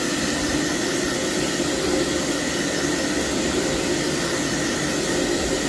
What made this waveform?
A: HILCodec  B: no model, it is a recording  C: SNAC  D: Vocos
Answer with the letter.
B